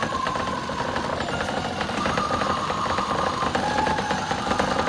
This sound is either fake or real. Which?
real